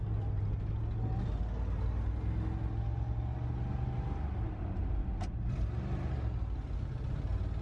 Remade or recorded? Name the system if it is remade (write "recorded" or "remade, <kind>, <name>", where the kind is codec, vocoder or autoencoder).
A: recorded